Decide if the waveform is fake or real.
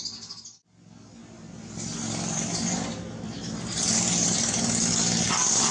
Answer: real